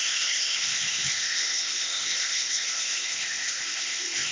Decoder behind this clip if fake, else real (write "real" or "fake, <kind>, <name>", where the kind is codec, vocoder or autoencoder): fake, codec, ZipCodec